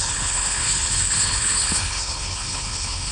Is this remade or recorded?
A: remade